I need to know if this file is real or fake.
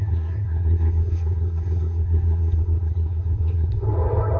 fake